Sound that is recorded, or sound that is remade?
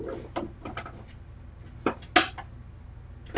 recorded